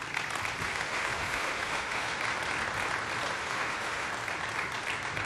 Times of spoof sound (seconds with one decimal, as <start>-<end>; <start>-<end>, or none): 0.6-2.2; 3.4-4.1